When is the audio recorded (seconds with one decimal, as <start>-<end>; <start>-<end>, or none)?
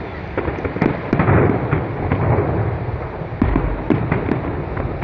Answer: 0.0-5.0